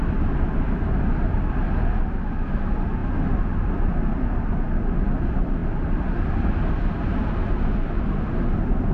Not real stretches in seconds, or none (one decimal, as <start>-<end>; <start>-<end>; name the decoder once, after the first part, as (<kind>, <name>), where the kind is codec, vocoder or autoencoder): none